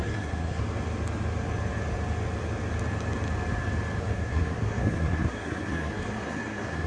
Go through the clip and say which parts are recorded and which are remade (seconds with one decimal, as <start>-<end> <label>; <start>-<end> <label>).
0.0-0.6 remade; 0.6-4.0 recorded; 4.0-6.9 remade